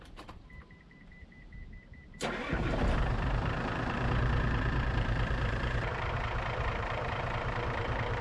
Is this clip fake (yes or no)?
yes